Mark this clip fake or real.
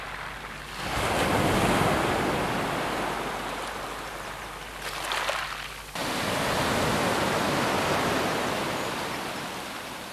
real